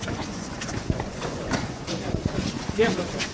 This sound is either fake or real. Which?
fake